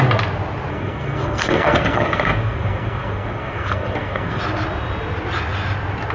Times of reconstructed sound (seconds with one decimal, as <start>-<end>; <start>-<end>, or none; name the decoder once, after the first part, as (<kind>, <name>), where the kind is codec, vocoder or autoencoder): 0.7-4.4 (codec, SNAC)